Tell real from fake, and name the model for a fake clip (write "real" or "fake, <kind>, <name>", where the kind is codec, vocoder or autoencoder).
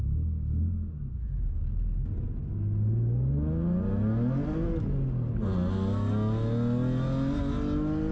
real